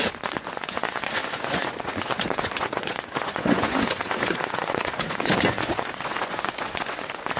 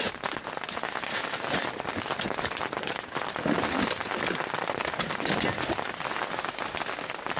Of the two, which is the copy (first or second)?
first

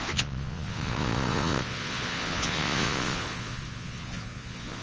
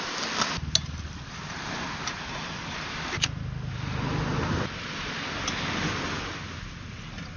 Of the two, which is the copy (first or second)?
first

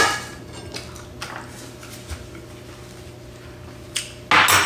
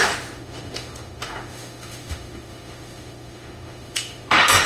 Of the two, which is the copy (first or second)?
second